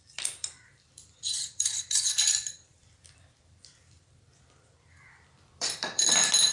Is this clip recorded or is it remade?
remade